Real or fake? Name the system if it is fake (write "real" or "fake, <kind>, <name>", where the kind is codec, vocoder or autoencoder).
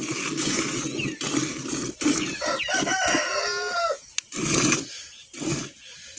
real